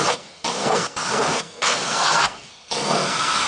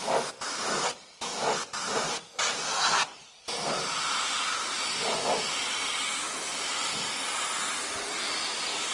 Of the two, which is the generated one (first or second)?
first